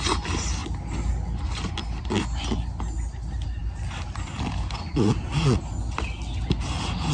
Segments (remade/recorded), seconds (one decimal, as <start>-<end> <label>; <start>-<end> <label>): 0.0-7.1 recorded